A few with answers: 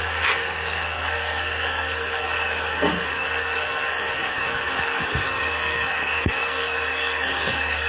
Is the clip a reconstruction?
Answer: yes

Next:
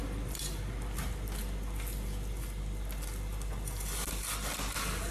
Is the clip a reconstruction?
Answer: no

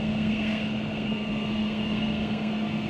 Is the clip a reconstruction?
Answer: yes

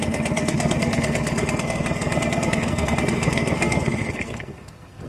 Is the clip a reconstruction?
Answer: yes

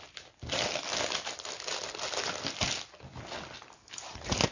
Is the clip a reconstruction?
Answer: no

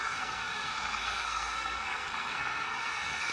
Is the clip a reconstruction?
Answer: yes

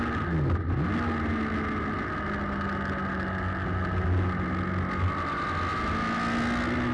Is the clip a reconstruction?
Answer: no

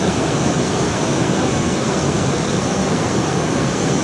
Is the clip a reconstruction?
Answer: yes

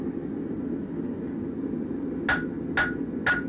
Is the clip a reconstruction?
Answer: no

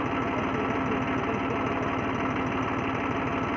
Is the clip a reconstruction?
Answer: no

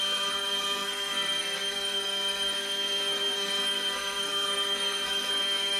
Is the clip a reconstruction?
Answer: yes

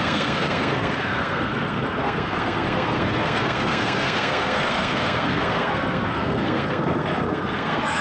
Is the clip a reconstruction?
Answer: yes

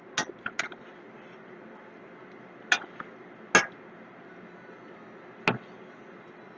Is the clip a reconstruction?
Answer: no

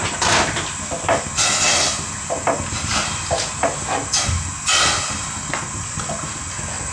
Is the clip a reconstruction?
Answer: no